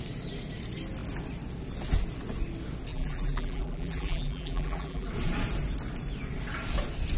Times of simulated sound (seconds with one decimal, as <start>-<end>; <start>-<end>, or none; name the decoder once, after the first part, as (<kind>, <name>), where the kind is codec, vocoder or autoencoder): 2.9-5.1 (vocoder, BigVGAN v2)